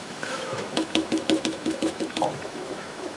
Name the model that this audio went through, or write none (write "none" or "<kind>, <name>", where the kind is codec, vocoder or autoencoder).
autoencoder, DAC-VAE